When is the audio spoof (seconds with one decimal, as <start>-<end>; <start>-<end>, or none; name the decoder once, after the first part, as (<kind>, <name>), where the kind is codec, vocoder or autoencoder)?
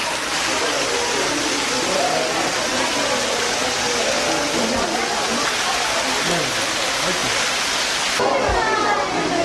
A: 7.2-8.0 (vocoder, BigVGAN v2)